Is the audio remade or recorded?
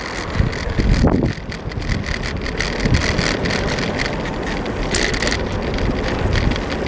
recorded